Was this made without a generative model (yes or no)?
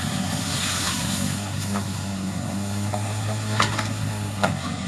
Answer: no